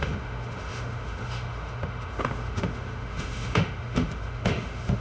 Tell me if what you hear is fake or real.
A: fake